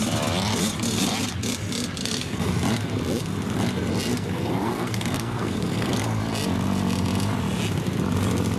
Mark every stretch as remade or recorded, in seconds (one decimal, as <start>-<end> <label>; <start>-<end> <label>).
0.0-2.0 recorded; 2.0-2.5 remade; 2.5-4.1 recorded; 4.1-6.2 remade; 6.2-8.6 recorded